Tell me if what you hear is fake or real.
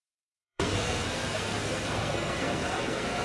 fake